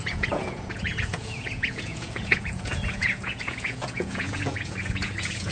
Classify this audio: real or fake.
fake